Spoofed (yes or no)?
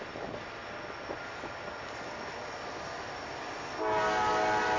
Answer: no